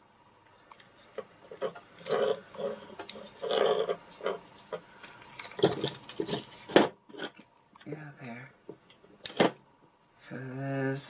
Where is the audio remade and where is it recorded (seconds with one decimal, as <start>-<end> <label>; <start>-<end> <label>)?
0.0-11.1 recorded